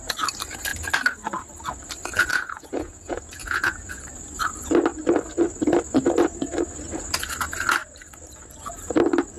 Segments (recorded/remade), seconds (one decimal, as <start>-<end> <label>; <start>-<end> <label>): 0.0-2.3 recorded; 2.3-4.0 remade; 4.0-9.4 recorded